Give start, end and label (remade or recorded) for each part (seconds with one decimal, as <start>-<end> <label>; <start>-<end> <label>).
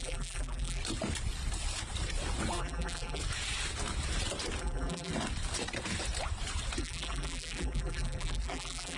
0.0-0.8 remade; 0.8-2.6 recorded; 2.6-3.2 remade; 3.2-4.6 recorded; 4.6-5.1 remade; 5.1-6.8 recorded; 6.8-9.0 remade